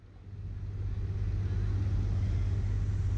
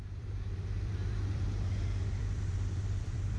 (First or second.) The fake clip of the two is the second